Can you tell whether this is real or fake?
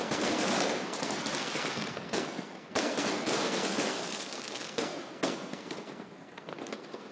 fake